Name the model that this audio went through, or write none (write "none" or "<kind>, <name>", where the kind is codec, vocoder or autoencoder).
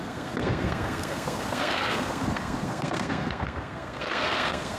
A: codec, SNAC